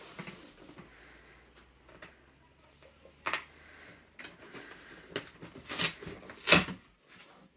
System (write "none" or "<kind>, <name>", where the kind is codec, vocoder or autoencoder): none